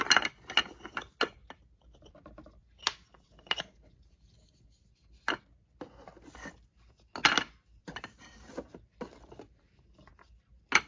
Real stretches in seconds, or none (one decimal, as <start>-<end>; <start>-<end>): 0.0-7.8; 9.6-10.9